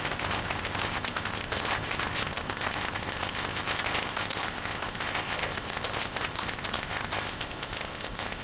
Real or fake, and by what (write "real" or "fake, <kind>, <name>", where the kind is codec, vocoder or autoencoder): fake, codec, ZipCodec